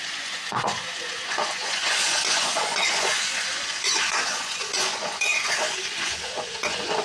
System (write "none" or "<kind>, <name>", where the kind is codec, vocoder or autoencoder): vocoder, Vocos